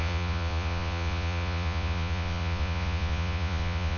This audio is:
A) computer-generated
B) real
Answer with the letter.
A